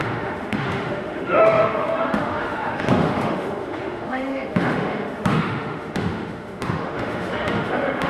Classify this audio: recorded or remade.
remade